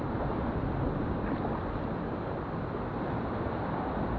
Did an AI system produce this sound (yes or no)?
no